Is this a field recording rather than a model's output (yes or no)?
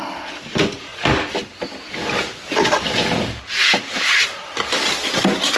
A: yes